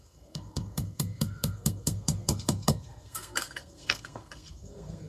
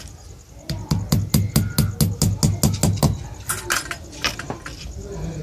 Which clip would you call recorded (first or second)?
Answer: second